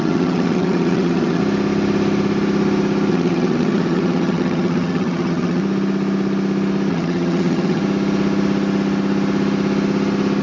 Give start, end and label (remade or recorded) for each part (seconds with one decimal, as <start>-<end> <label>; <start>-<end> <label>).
0.0-1.4 remade; 1.4-3.1 recorded; 3.1-5.6 remade; 5.6-6.9 recorded; 6.9-7.8 remade; 7.8-10.4 recorded

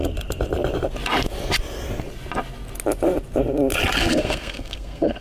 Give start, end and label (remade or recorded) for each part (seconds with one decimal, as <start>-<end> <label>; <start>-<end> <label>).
0.0-4.0 recorded; 4.0-5.2 remade

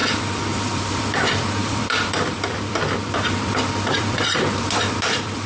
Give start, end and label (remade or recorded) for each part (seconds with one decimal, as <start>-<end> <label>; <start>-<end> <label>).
0.0-5.5 remade

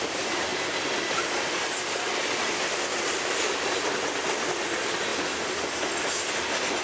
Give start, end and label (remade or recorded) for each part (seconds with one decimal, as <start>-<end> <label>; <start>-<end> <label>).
0.0-6.8 recorded

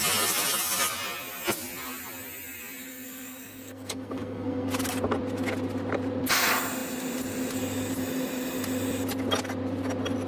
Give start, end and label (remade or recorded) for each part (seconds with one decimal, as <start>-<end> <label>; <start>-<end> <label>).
0.0-2.9 recorded; 2.9-4.7 remade; 4.7-10.3 recorded

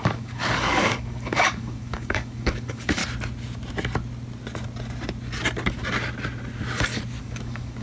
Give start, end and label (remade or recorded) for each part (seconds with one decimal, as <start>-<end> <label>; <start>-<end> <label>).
0.0-3.0 remade; 3.0-7.2 recorded; 7.2-7.8 remade